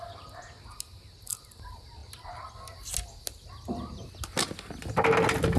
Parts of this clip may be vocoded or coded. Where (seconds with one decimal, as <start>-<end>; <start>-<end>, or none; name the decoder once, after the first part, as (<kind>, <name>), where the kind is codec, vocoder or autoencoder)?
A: none